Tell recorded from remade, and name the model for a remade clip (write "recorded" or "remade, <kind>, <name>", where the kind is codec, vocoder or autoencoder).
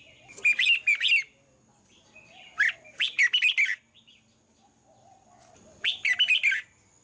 recorded